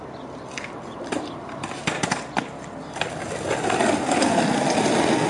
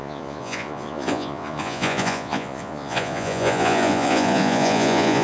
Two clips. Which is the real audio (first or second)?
first